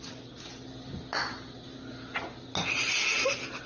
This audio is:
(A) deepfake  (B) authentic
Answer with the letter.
B